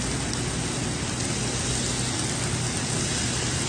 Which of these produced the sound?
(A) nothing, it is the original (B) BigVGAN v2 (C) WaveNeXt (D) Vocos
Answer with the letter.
A